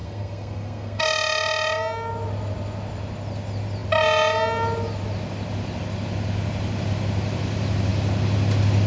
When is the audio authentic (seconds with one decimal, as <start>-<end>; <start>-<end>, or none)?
1.0-8.9